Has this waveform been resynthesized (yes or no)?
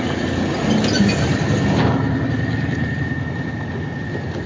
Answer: no